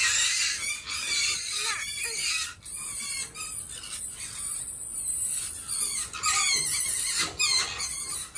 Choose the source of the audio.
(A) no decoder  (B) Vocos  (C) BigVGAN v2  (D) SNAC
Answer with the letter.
A